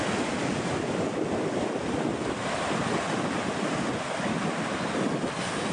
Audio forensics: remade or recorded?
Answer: recorded